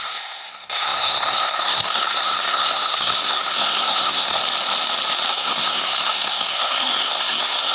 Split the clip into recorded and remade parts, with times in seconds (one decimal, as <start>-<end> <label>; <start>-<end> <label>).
0.0-4.4 remade; 4.4-5.3 recorded; 5.3-7.7 remade